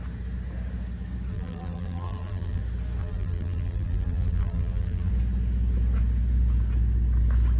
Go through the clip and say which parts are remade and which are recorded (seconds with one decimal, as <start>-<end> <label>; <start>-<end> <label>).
0.0-1.3 recorded; 1.3-2.6 remade; 2.6-3.0 recorded; 3.0-5.1 remade; 5.1-7.6 recorded